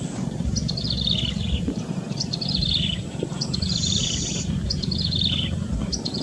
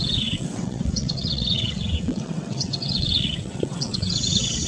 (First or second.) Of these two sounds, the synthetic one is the second